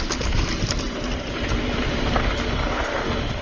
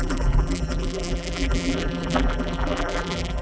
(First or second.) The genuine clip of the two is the first